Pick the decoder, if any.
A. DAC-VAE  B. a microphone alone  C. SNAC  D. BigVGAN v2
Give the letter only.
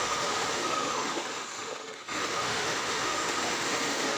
A